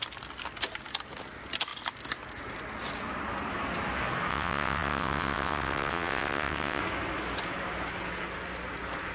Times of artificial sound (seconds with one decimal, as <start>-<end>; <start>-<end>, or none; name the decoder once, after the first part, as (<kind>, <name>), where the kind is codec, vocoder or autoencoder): 4.3-6.8 (vocoder, WaveNeXt)